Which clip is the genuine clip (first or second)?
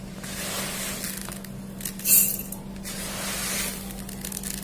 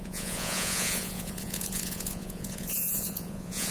first